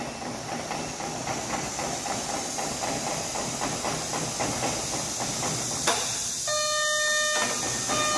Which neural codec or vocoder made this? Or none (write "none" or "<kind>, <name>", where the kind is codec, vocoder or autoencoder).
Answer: none